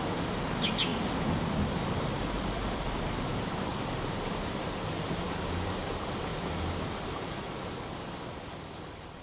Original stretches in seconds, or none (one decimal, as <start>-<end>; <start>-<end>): 0.0-0.9; 3.2-3.7; 4.6-6.3; 8.0-9.2